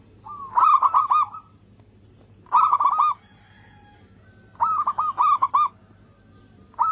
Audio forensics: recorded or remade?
recorded